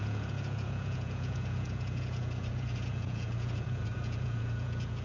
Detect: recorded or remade remade